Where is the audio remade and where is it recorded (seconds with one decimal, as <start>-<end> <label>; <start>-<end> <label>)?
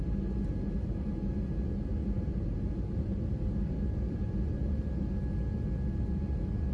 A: 0.0-2.0 recorded; 2.0-5.1 remade; 5.1-6.7 recorded